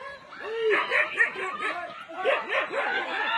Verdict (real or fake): real